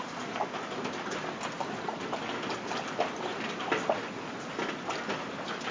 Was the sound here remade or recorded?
recorded